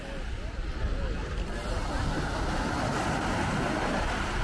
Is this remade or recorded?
recorded